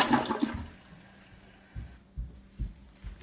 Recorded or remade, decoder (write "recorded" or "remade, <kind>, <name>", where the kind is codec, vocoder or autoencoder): recorded